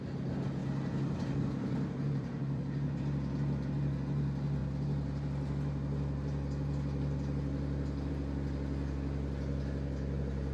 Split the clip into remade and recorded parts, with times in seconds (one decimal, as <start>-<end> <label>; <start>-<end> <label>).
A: 0.0-0.6 recorded; 0.6-3.0 remade; 3.0-10.5 recorded